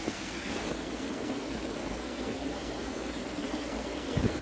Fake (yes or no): yes